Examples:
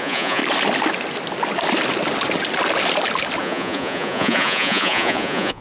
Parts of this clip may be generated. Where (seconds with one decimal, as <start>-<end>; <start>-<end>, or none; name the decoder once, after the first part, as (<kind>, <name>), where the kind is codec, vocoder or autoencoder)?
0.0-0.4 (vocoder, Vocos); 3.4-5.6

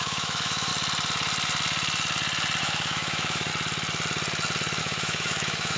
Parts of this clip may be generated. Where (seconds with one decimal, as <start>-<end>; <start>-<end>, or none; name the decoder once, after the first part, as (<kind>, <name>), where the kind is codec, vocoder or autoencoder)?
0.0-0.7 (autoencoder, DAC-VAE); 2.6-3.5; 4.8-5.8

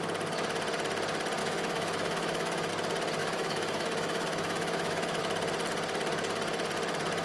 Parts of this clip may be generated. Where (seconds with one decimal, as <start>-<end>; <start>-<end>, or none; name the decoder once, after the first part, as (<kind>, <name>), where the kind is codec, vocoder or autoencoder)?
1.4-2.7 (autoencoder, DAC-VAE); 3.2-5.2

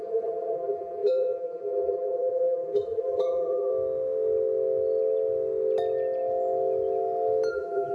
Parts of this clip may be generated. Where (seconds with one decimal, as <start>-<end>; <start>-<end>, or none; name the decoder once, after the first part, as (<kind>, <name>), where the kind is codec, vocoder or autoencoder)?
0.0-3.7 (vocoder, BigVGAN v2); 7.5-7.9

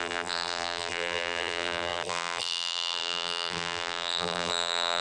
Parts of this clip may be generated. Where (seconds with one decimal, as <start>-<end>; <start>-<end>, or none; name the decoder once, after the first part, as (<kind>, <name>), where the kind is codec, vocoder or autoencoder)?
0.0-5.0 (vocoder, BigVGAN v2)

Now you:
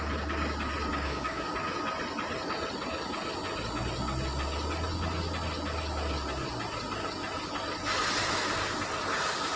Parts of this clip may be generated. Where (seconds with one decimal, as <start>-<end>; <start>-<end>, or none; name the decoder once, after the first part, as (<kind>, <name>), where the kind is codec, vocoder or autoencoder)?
0.9-1.5 (codec, DAC)

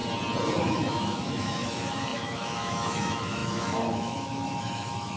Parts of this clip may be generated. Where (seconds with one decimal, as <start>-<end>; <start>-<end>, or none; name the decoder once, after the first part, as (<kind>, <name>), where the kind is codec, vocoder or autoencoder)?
0.6-5.2 (autoencoder, DAC-VAE)